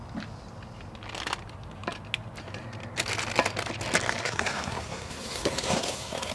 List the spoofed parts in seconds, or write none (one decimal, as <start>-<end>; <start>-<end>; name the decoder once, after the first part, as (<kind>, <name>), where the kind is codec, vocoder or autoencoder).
4.2-6.3 (codec, SNAC)